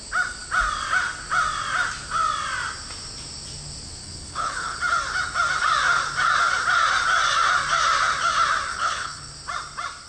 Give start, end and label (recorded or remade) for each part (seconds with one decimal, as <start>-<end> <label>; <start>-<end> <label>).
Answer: 0.0-4.0 recorded; 4.0-4.8 remade; 4.8-8.7 recorded; 8.7-9.3 remade; 9.3-10.1 recorded